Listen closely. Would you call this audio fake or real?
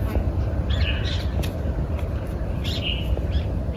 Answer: real